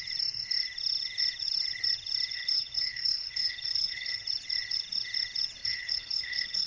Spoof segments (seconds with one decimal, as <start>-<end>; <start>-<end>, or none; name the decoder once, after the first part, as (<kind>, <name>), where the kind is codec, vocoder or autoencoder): 2.3-4.2 (codec, HILCodec); 5.6-6.7